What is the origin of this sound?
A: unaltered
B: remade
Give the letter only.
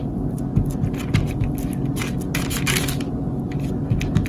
A